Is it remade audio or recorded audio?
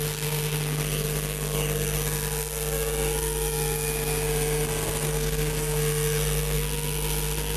remade